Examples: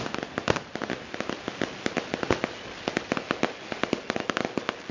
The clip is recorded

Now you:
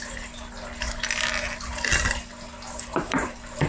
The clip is recorded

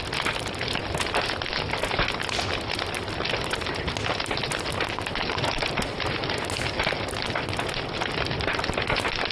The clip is recorded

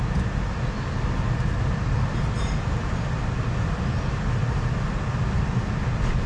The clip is recorded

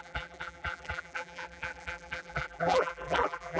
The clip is remade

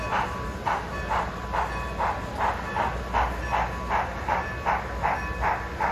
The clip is recorded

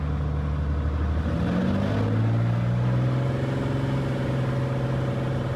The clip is recorded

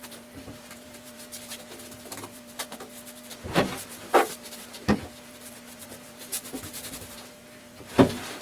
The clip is remade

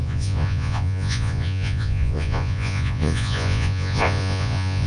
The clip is remade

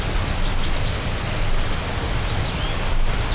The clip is recorded